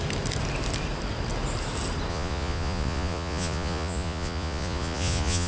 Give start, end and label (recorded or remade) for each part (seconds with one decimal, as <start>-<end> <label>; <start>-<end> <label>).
0.0-2.1 recorded; 2.1-5.5 remade